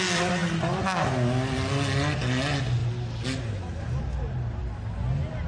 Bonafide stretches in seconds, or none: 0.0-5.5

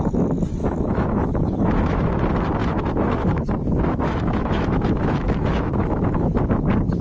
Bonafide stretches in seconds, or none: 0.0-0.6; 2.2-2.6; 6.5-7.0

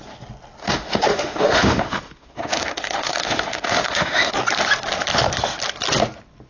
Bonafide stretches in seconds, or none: 0.0-0.6; 4.3-6.5

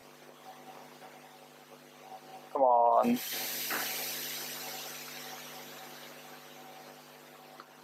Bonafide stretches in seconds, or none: 0.0-7.8

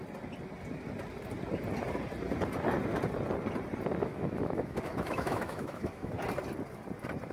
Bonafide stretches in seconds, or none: 0.0-4.0; 6.1-7.3